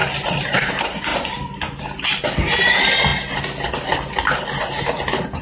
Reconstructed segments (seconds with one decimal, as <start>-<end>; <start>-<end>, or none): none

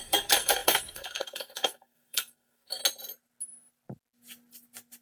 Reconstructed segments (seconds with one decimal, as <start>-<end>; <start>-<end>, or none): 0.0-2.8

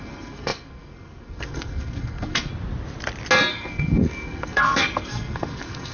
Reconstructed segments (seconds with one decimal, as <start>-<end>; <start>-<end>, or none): 0.0-2.5; 3.5-5.9

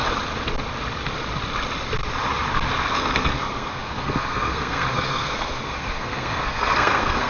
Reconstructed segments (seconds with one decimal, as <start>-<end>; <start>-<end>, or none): 2.9-7.3